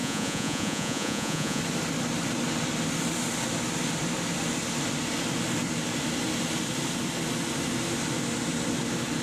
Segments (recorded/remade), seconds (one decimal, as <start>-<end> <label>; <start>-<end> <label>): 0.0-1.6 remade; 1.6-9.2 recorded